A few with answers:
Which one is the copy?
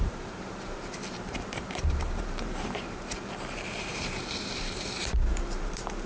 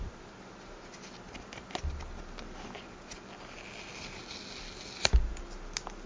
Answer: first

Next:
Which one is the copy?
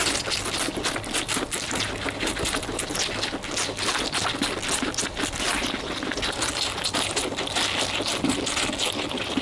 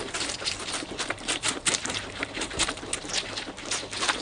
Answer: second